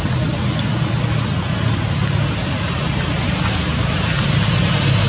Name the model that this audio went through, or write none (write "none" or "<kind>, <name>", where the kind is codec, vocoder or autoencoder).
none